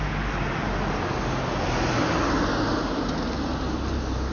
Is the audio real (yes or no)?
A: yes